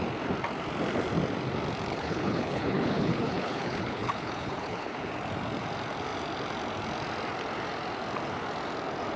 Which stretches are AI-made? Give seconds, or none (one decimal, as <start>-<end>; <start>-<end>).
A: 1.9-5.1